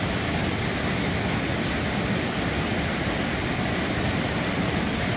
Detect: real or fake real